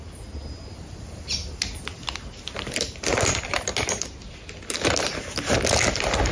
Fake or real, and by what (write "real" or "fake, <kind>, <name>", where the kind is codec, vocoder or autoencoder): real